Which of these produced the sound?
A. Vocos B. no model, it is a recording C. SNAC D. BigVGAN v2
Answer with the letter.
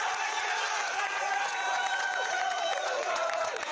A